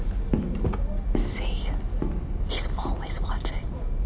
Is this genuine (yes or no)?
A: no